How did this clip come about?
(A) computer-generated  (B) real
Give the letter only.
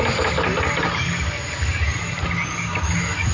B